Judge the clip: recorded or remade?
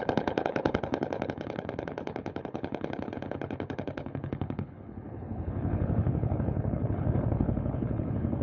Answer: remade